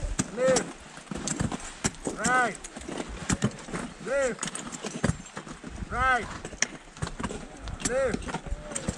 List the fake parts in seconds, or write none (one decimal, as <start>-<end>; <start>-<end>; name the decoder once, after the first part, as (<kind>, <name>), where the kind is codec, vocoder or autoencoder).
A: 1.3-1.9 (vocoder, BigVGAN v2); 3.2-5.4